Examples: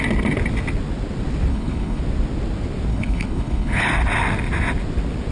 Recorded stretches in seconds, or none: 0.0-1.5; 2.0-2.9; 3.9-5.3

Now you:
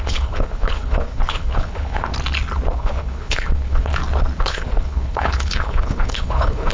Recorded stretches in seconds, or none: 2.1-2.7; 3.9-4.4

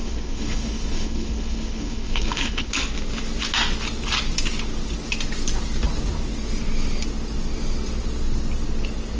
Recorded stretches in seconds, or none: 2.7-9.2

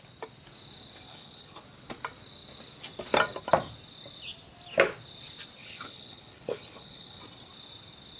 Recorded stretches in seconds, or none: 0.0-1.1; 1.6-5.6; 7.2-8.2

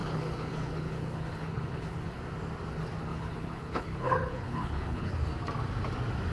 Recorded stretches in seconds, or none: 2.2-3.1; 5.1-6.3

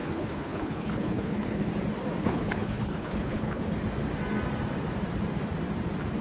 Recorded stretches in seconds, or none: 1.7-2.2; 3.7-6.2

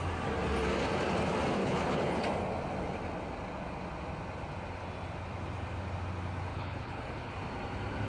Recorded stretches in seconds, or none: 0.0-1.6; 2.2-6.5; 7.3-8.1

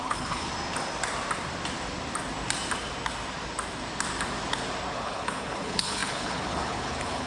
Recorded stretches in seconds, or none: 0.5-4.9